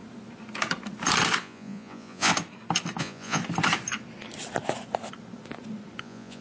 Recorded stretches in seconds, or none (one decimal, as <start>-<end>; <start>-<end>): 0.0-1.4; 2.3-3.0; 3.4-6.0